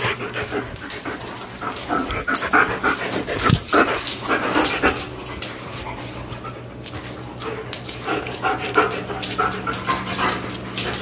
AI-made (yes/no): no